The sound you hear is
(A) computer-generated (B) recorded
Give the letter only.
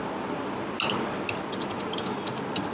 B